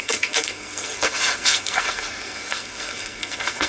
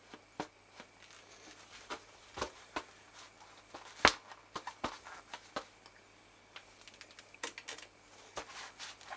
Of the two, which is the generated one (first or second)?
first